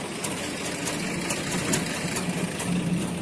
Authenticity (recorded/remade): recorded